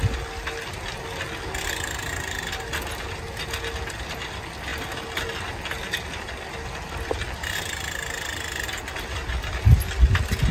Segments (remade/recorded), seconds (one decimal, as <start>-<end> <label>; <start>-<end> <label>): 0.0-10.5 recorded